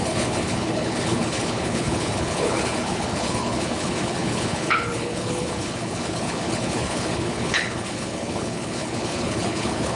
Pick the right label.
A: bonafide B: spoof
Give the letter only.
B